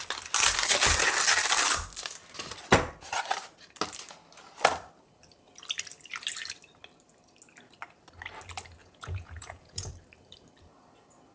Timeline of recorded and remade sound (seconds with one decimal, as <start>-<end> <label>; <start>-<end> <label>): 0.0-8.8 recorded; 8.8-9.9 remade; 9.9-11.3 recorded